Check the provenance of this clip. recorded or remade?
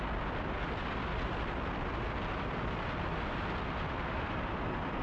recorded